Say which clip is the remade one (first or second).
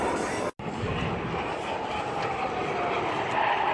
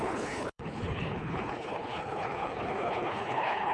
second